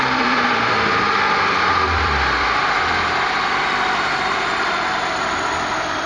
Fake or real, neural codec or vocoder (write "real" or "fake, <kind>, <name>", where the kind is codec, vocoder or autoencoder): fake, vocoder, BigVGAN v2